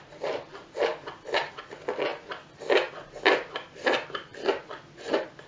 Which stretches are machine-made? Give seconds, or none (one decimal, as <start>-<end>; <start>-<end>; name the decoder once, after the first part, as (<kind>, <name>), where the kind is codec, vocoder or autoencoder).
0.0-0.9 (vocoder, BigVGAN v2); 1.7-2.1; 4.2-5.5

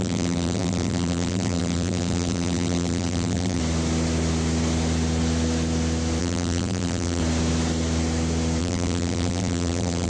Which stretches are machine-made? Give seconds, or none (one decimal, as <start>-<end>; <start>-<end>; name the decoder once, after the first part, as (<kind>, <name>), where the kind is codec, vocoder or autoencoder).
0.0-3.6 (vocoder, BigVGAN v2); 6.2-7.2; 8.6-10.1

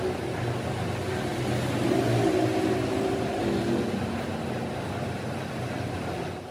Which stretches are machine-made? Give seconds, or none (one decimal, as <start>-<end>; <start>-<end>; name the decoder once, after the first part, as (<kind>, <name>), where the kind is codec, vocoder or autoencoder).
none

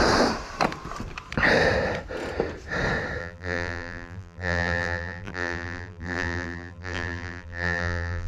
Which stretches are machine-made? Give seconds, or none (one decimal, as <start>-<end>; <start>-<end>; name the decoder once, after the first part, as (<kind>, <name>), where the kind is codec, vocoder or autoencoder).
3.2-8.3 (vocoder, BigVGAN v2)

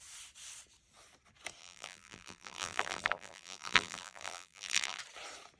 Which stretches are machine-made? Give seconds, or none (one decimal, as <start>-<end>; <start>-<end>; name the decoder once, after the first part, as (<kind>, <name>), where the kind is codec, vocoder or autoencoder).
1.6-5.0 (vocoder, BigVGAN v2)

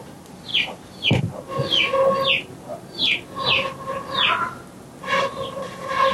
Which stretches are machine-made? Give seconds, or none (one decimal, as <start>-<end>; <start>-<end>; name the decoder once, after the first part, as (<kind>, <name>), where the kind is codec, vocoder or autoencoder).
0.5-1.2 (vocoder, BigVGAN v2); 2.7-5.6

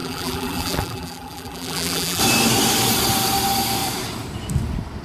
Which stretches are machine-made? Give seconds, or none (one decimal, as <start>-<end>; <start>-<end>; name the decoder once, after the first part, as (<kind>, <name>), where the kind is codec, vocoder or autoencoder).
0.0-2.2 (vocoder, BigVGAN v2)